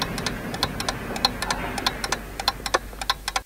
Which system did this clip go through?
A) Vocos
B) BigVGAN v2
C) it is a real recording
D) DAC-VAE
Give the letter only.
C